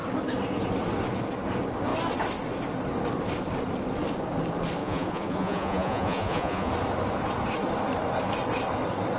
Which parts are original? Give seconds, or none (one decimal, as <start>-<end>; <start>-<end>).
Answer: 0.0-4.8; 6.7-9.2